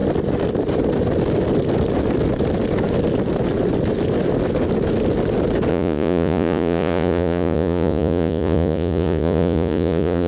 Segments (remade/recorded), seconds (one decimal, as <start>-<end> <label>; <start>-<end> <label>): 0.0-5.7 recorded; 5.7-10.3 remade